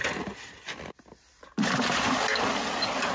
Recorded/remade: recorded